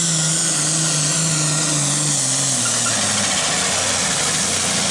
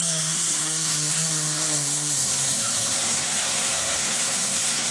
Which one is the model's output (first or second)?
second